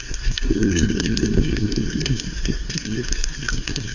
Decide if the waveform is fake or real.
fake